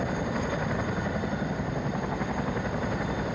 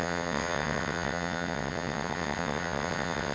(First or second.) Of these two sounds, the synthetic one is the second